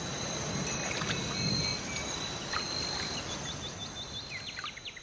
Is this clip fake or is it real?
real